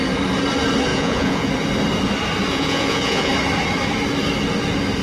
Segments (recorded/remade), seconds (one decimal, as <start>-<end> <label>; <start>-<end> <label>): 0.0-0.9 recorded; 0.9-1.5 remade; 1.5-2.5 recorded; 2.5-3.3 remade; 3.3-5.0 recorded